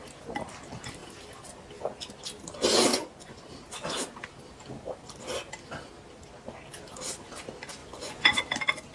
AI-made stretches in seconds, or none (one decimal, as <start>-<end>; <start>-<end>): 2.9-3.5; 7.8-8.4